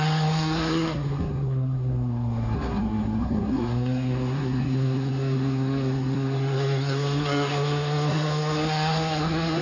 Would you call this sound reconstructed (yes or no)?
yes